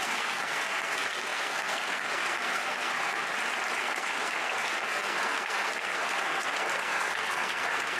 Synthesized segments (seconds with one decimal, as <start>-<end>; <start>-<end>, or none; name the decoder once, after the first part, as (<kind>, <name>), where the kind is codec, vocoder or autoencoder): 0.0-3.3 (codec, SNAC); 3.8-8.0